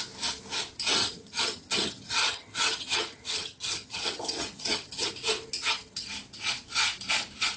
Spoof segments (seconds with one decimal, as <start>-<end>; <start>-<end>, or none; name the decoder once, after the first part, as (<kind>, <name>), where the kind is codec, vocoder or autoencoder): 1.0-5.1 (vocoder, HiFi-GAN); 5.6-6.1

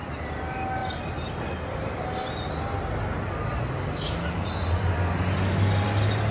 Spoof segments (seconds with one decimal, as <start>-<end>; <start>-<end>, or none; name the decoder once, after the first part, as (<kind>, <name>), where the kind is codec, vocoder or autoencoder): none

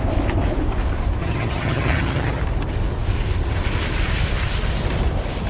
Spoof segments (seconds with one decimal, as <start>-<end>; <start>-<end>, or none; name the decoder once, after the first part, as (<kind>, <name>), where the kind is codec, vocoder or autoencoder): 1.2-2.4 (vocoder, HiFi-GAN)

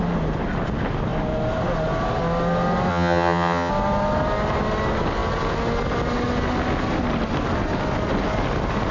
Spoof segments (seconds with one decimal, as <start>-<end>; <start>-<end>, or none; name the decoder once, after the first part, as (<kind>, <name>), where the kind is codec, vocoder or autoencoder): 2.9-3.7 (vocoder, HiFi-GAN)